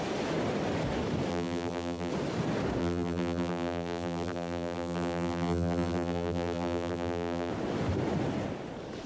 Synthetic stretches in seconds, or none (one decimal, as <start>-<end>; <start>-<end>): 1.3-2.1; 2.8-7.5

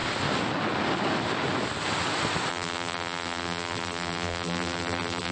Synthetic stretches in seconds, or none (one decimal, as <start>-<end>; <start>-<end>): 2.5-5.3

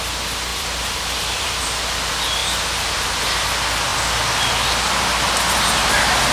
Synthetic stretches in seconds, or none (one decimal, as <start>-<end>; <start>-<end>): 0.5-1.6

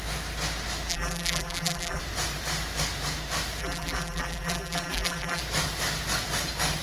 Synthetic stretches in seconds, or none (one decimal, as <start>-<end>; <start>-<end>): 0.9-2.0; 3.6-5.4

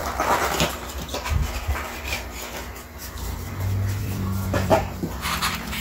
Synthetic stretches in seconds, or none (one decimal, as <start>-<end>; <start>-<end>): 3.0-3.6; 4.0-5.8

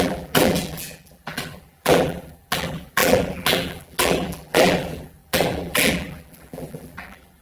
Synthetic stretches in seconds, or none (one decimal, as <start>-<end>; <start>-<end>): 0.0-7.4

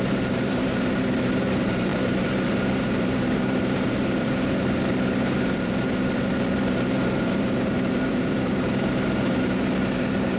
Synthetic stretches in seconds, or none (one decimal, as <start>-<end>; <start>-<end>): 0.0-10.4

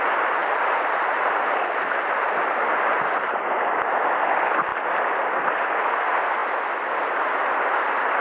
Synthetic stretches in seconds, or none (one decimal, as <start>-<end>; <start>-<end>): 0.4-3.9